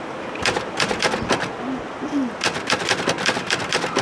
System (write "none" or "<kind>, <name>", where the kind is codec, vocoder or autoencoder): none